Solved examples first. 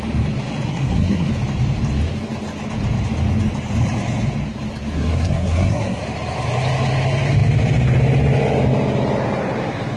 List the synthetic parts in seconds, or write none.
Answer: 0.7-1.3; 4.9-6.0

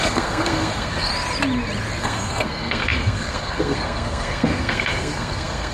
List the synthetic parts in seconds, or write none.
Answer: 0.0-1.1; 2.0-5.7

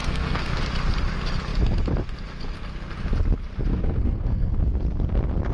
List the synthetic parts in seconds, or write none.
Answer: 0.0-0.6; 3.7-4.6

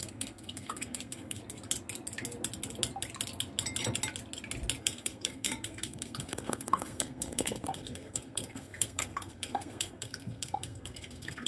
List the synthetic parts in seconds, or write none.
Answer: 0.0-1.4; 4.8-11.5

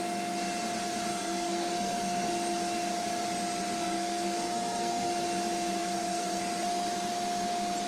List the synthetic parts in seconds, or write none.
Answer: 1.1-2.3; 3.8-5.1; 5.8-6.4

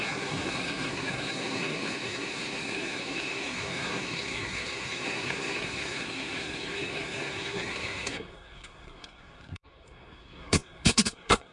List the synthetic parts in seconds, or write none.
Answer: 0.0-11.5